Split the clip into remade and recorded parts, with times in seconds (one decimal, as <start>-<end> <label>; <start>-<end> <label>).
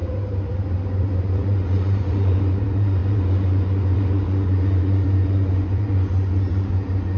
0.0-0.5 recorded; 0.5-7.2 remade